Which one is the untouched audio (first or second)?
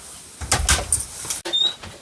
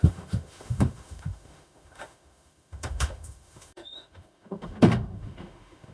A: first